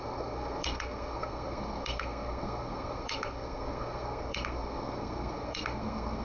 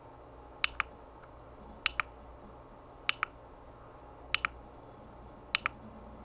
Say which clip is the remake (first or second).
first